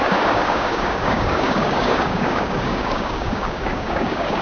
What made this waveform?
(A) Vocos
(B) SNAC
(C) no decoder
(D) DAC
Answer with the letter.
D